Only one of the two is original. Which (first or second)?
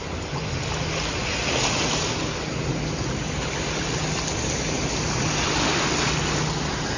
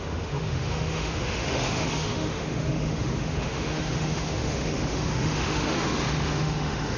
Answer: first